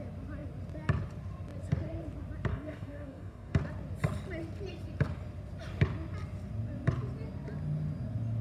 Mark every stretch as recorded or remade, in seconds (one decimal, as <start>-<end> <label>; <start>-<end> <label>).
0.0-2.5 recorded; 2.5-3.6 remade; 3.6-8.4 recorded